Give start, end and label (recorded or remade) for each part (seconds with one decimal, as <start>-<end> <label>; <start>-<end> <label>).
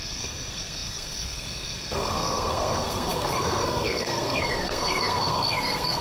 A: 0.0-6.0 remade